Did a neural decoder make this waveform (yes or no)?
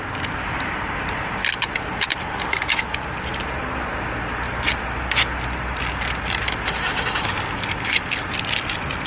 no